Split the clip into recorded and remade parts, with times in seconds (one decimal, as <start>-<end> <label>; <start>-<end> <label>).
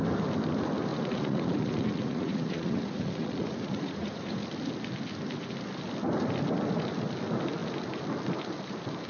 0.0-0.9 recorded; 0.9-4.4 remade; 4.4-9.1 recorded